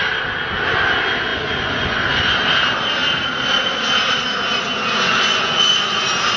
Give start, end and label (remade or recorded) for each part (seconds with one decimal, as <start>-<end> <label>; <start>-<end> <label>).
0.0-1.3 recorded; 1.3-2.2 remade; 2.2-4.7 recorded; 4.7-6.0 remade; 6.0-6.4 recorded